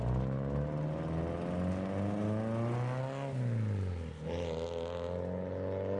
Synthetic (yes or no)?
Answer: no